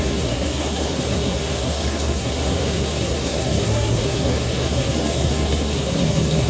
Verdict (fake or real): fake